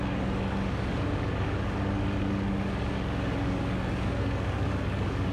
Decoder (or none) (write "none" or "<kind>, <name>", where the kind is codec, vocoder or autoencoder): codec, DAC